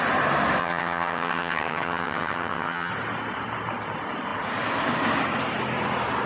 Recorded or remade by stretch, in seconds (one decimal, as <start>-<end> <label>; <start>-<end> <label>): 0.0-0.6 recorded; 0.6-2.9 remade; 2.9-6.3 recorded